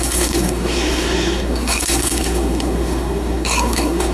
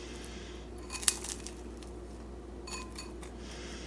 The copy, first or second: first